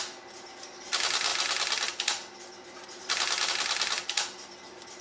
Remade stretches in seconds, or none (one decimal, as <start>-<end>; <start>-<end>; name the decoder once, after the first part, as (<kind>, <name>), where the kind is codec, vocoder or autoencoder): none